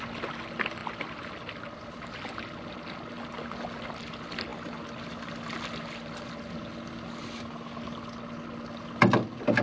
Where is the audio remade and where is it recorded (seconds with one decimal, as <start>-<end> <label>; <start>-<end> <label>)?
0.0-9.6 recorded